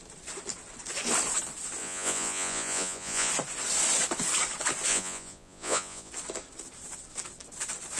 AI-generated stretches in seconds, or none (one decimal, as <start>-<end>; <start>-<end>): 1.8-3.3; 4.9-6.1